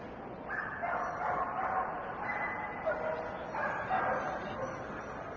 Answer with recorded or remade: recorded